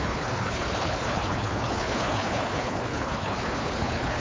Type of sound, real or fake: fake